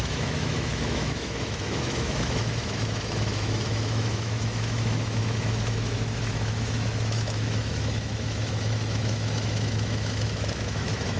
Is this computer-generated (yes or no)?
yes